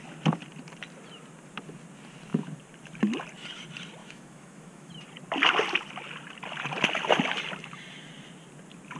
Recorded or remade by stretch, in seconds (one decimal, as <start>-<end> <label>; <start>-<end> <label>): 0.0-4.0 recorded; 4.0-4.9 remade; 4.9-9.0 recorded